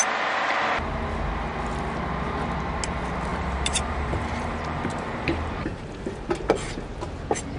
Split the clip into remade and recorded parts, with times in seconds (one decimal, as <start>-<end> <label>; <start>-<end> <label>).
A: 0.0-3.3 recorded; 3.3-6.0 remade; 6.0-7.6 recorded